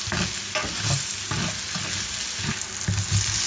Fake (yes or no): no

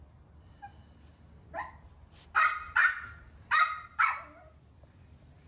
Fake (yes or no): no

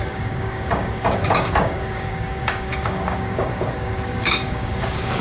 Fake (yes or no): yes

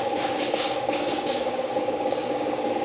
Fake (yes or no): yes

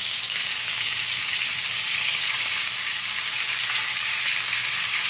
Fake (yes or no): yes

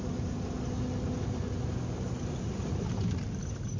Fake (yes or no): no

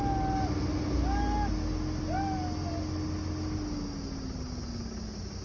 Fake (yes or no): no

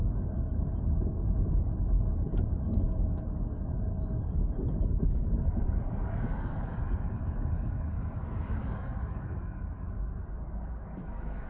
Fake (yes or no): yes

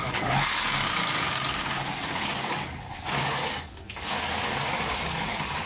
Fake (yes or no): yes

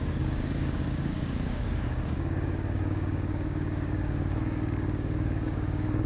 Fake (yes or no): yes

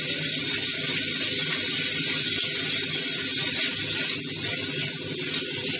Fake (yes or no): no